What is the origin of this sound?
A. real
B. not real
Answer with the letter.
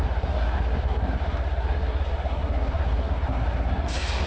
B